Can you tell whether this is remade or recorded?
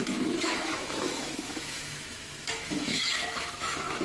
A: remade